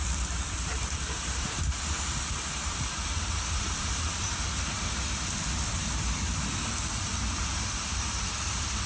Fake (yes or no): yes